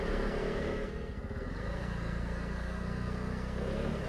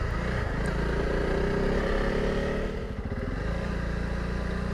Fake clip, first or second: first